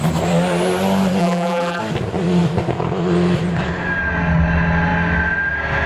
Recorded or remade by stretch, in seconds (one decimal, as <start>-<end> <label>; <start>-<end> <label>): 0.0-1.2 recorded; 1.2-1.8 remade; 1.8-5.9 recorded